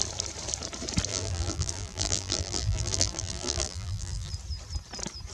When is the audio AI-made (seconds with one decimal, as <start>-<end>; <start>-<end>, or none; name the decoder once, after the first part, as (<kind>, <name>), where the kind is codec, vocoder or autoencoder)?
1.1-4.3 (vocoder, BigVGAN v2)